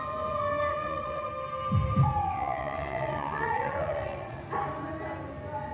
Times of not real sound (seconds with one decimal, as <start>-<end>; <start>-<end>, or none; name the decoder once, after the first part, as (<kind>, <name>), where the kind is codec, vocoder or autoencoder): 0.7-1.3 (vocoder, WaveNeXt); 2.0-4.4